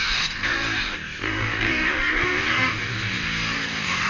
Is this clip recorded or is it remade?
remade